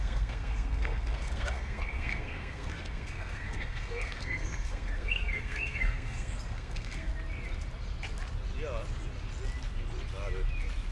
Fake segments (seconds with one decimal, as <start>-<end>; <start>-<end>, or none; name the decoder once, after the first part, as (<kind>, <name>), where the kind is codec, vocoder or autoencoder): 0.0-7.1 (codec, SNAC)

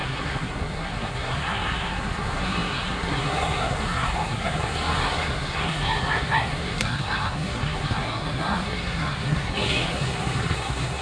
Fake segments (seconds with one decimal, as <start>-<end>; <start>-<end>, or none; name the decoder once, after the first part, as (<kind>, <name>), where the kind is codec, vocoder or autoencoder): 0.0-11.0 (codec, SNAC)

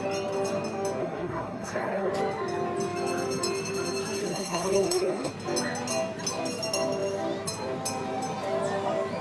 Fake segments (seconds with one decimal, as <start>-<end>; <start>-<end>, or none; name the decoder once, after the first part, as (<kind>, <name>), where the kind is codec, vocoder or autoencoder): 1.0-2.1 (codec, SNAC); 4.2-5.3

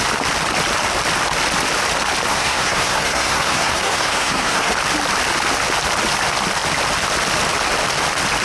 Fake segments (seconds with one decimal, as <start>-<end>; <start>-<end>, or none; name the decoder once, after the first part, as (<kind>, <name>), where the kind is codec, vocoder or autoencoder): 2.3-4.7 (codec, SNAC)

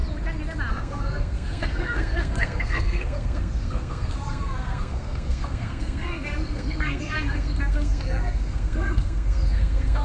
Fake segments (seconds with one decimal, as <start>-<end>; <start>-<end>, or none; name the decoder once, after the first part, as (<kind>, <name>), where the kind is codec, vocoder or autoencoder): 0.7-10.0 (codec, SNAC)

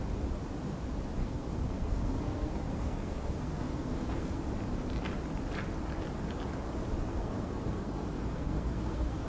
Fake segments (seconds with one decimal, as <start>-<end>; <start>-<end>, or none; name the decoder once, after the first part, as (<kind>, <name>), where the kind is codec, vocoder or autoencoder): 1.2-4.4 (codec, SNAC); 7.1-9.3

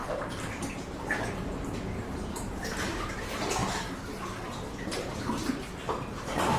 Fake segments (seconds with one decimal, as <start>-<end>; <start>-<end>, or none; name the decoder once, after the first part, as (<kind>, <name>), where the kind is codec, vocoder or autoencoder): none

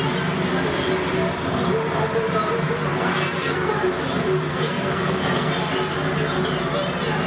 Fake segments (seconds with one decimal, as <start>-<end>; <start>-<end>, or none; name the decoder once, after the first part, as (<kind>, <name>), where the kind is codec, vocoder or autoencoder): 2.9-3.7 (codec, SNAC); 4.5-5.5